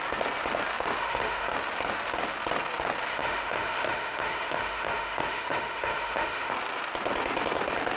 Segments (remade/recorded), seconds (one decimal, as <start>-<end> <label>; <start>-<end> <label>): 0.0-1.0 recorded; 1.0-1.5 remade; 1.5-3.1 recorded; 3.1-6.5 remade; 6.5-8.0 recorded